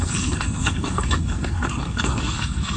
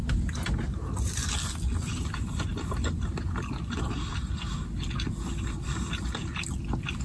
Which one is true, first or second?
second